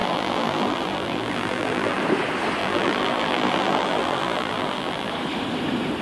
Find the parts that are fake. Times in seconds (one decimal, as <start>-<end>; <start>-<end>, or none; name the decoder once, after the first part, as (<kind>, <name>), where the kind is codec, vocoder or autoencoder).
0.0-2.0 (vocoder, BigVGAN v2); 2.6-5.1